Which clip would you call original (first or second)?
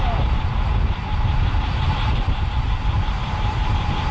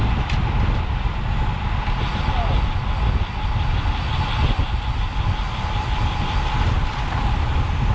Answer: second